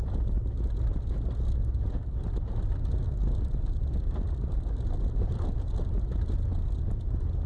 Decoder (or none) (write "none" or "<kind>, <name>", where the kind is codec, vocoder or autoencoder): none